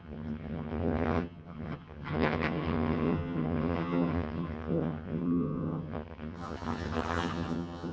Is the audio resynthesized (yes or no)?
yes